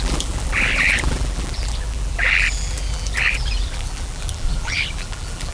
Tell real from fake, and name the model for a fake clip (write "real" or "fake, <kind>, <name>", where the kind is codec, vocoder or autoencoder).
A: fake, vocoder, BigVGAN v2